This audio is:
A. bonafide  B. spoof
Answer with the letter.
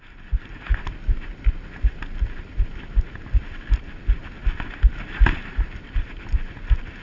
A